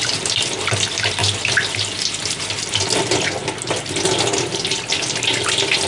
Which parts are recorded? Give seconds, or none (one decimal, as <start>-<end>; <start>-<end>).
0.0-5.9